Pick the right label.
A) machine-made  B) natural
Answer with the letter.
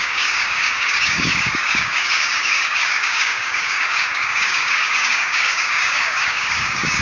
A